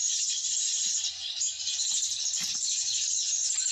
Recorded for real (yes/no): no